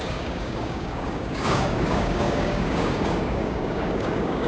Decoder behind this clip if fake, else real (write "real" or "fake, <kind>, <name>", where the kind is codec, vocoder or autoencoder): fake, codec, DAC